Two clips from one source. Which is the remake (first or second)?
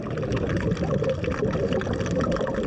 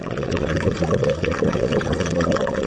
second